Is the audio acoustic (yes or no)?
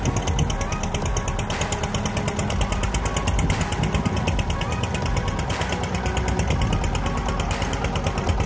yes